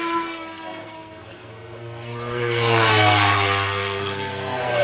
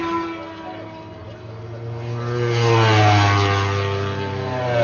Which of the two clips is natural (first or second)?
second